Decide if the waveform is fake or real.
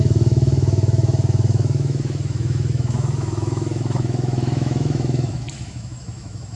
fake